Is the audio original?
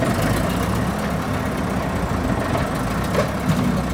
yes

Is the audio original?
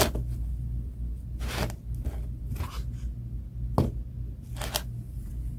yes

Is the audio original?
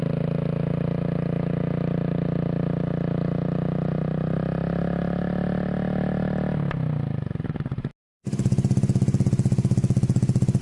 yes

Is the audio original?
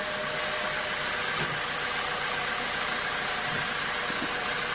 yes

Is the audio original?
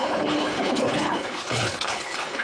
no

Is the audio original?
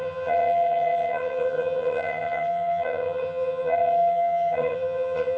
no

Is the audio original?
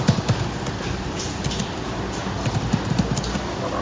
no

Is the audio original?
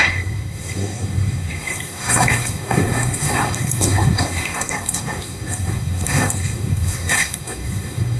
no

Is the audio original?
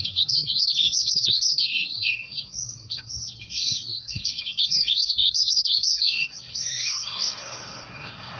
no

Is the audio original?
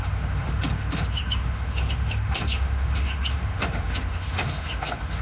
no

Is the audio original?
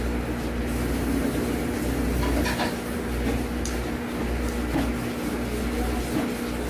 yes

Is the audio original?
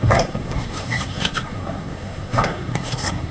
no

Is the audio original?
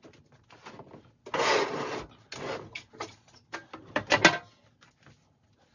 yes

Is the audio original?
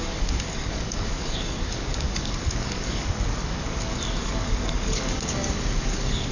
no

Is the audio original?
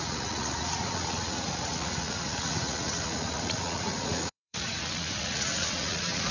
no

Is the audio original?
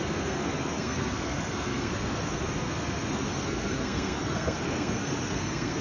no